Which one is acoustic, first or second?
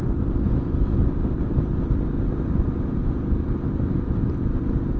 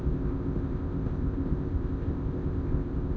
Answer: first